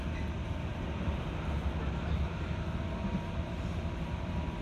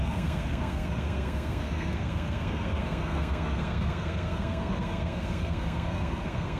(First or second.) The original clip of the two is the first